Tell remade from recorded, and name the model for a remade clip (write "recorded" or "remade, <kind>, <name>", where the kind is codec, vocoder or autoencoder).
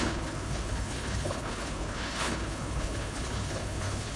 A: remade, codec, HILCodec